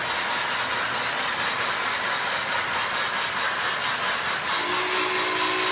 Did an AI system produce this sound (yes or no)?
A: no